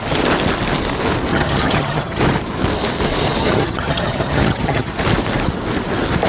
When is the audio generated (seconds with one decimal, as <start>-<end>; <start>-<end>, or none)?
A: 1.3-2.2; 3.4-4.9